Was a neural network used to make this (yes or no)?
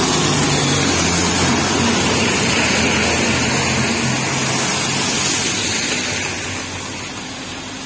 no